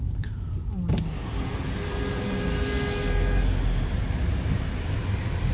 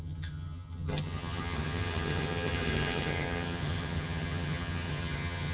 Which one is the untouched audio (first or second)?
first